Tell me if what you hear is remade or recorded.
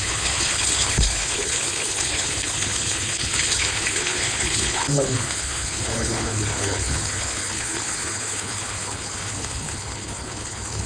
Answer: remade